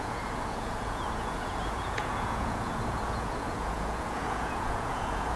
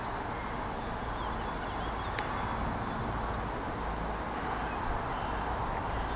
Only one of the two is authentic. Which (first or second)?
second